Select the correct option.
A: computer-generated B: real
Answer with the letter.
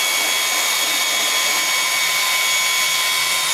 B